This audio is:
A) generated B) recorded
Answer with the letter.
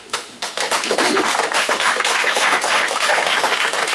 A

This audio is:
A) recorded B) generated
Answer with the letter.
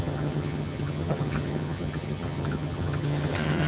B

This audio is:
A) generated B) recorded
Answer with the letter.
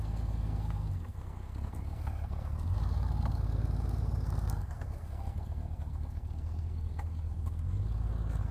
A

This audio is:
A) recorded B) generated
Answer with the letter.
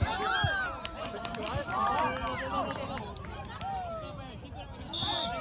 A